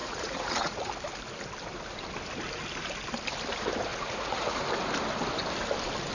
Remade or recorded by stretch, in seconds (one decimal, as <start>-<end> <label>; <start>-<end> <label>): 0.0-0.9 remade; 0.9-3.9 recorded; 3.9-4.6 remade; 4.6-6.1 recorded